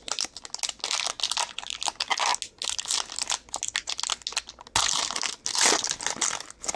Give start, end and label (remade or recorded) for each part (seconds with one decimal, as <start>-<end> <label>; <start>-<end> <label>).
0.0-6.8 recorded